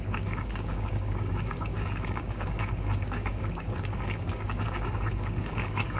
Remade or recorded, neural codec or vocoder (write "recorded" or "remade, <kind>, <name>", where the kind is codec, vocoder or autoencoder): remade, codec, DAC